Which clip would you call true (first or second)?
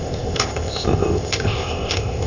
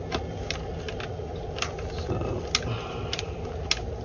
second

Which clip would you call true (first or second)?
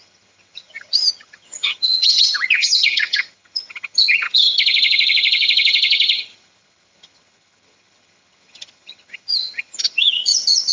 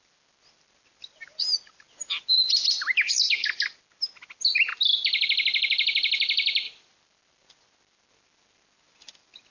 second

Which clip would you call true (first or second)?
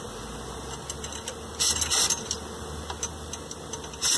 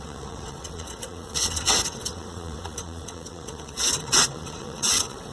first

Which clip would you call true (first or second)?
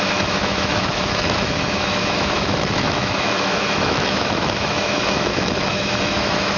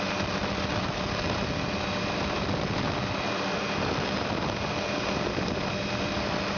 second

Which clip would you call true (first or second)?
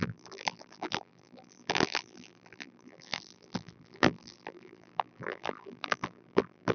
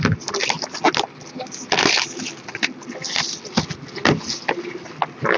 second